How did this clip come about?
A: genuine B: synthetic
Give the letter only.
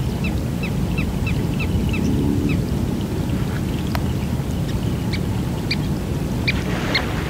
A